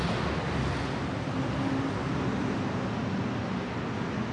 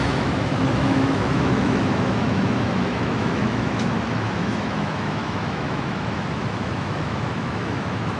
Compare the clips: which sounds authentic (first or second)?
first